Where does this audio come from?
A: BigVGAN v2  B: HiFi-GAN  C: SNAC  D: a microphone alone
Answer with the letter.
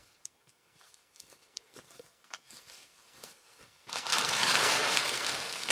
C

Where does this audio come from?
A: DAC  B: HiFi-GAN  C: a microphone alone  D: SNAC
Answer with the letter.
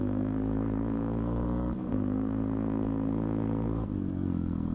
D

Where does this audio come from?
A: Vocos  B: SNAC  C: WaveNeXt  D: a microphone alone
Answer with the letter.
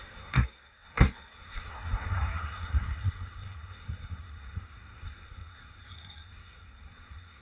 B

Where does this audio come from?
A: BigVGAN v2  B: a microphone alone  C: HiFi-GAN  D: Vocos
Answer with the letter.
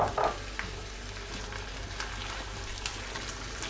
B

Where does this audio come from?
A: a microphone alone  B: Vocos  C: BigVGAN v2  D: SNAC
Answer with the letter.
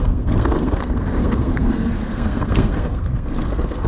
D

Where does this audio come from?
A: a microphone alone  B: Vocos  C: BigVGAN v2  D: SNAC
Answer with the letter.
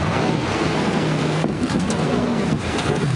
D